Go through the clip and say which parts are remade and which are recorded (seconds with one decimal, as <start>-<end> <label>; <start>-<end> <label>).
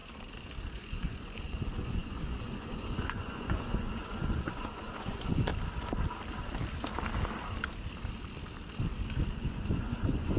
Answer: 0.0-0.7 recorded; 0.7-5.5 remade; 5.5-9.4 recorded; 9.4-10.4 remade